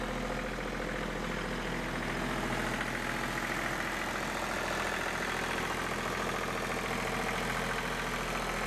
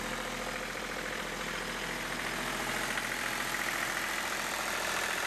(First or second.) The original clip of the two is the first